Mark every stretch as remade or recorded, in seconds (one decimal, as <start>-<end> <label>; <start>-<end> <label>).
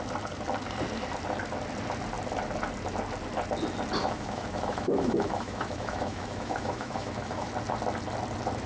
0.0-4.0 recorded; 4.0-7.5 remade; 7.5-8.7 recorded